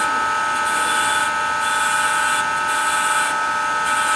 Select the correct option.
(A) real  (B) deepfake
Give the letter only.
A